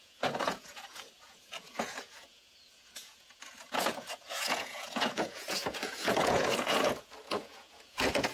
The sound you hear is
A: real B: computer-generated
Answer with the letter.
B